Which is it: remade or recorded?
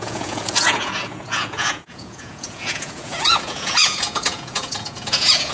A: remade